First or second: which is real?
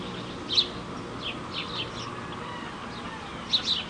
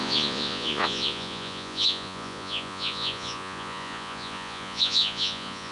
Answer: first